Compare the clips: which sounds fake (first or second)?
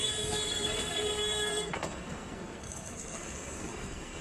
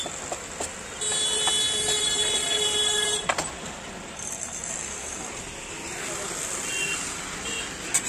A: first